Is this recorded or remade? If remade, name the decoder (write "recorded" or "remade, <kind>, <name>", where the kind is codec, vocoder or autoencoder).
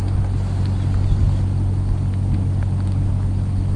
recorded